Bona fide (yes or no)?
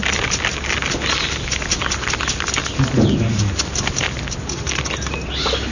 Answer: yes